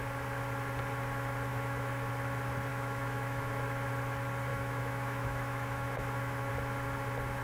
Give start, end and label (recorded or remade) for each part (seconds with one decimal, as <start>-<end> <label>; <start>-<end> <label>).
0.0-1.5 recorded; 1.5-2.1 remade; 2.1-2.7 recorded; 2.7-3.5 remade; 3.5-4.5 recorded; 4.5-6.5 remade; 6.5-7.4 recorded